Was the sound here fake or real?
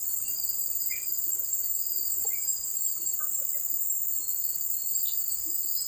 real